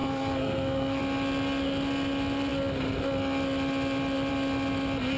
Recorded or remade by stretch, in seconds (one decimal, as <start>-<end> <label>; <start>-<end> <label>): 0.0-1.0 remade; 1.0-5.2 recorded